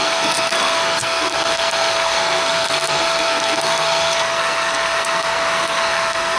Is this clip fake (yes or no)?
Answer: yes